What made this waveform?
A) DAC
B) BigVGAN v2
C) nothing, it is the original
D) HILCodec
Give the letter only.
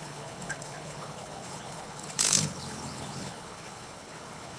D